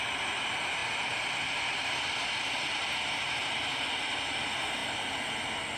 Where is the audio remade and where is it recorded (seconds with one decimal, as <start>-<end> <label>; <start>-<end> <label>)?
0.0-5.8 recorded